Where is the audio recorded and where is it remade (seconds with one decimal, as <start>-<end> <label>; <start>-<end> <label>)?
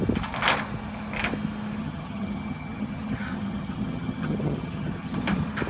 0.0-1.8 recorded; 1.8-5.2 remade; 5.2-5.7 recorded